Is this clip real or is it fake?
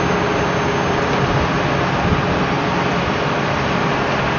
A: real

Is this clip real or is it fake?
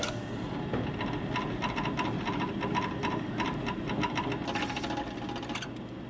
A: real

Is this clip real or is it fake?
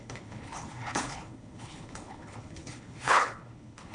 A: fake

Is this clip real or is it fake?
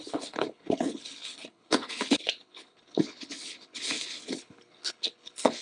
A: fake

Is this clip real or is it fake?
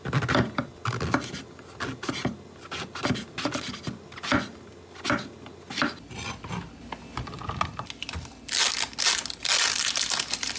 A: real